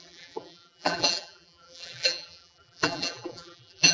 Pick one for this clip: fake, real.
fake